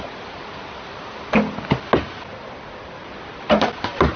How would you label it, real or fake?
real